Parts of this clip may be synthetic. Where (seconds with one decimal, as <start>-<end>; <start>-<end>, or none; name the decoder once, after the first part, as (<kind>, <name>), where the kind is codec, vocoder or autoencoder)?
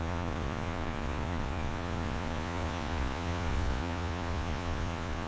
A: 0.0-5.3 (vocoder, Vocos)